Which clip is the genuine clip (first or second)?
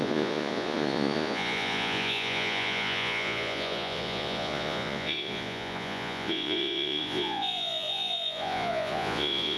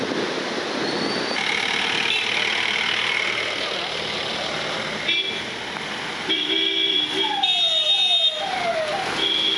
second